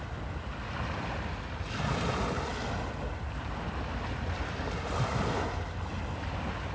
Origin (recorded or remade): recorded